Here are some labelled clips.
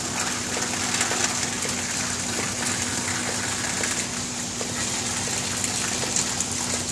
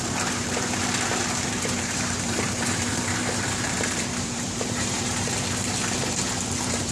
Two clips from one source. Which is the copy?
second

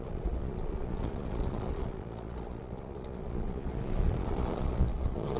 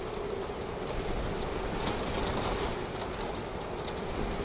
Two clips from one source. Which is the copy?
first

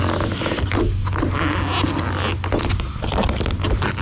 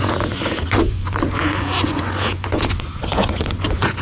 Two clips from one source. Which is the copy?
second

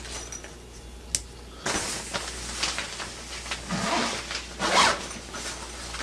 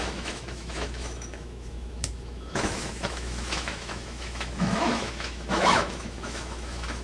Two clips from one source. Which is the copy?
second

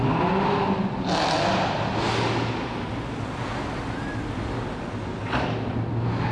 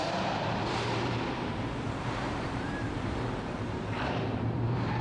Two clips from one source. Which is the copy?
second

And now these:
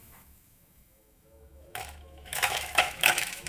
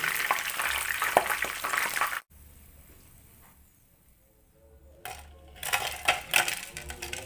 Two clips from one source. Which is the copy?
first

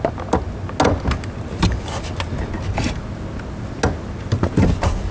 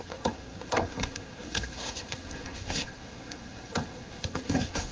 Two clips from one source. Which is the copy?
second